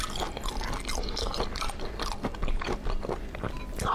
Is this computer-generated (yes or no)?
no